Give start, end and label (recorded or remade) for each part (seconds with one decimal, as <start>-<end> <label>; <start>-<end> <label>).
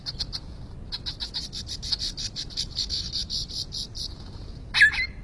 0.0-5.2 recorded